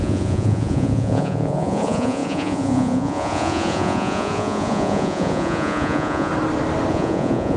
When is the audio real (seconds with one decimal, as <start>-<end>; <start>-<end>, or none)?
6.3-6.9